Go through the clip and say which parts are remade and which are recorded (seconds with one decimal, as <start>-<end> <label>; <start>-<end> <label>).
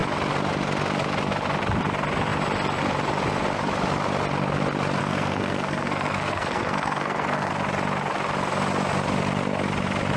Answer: 0.0-5.0 recorded; 5.0-7.5 remade; 7.5-10.2 recorded